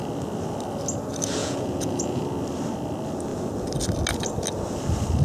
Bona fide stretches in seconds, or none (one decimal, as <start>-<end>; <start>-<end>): 0.0-1.4; 2.2-5.2